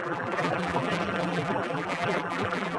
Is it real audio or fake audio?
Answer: fake